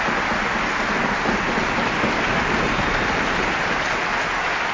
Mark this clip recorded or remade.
recorded